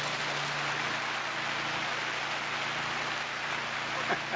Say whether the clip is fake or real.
real